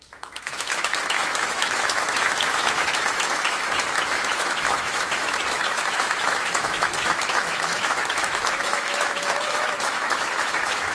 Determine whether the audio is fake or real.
fake